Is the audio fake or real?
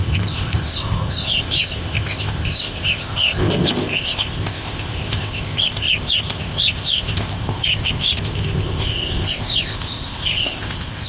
fake